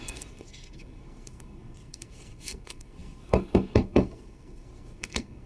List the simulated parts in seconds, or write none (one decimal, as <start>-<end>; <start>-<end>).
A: 0.0-5.5